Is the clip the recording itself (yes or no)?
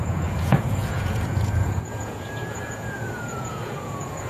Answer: no